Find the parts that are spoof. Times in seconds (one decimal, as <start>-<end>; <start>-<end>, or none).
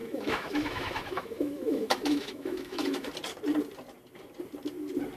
0.0-3.1